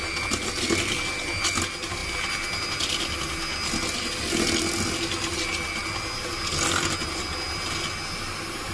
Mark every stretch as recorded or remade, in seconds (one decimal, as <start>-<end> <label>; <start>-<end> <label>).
0.0-8.7 recorded